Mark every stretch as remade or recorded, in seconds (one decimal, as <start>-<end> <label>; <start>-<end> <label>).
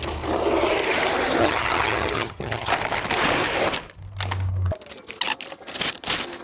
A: 0.0-1.4 recorded; 1.4-2.7 remade; 2.7-6.4 recorded